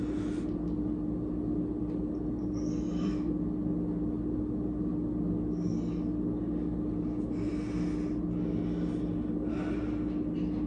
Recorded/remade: recorded